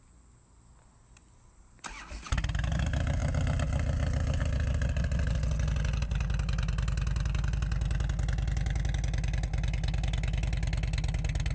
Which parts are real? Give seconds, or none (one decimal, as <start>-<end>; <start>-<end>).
0.0-11.5